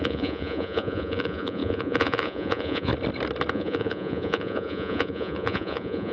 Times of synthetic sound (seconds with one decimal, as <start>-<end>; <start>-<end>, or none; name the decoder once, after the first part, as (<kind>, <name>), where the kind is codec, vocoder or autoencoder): 0.0-2.9 (vocoder, Vocos); 3.5-6.1